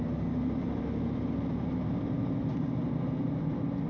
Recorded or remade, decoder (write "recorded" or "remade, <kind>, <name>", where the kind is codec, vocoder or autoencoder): recorded